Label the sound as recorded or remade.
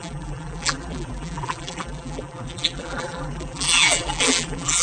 remade